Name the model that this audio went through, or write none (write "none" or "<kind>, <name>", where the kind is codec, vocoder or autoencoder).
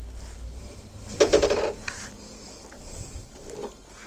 none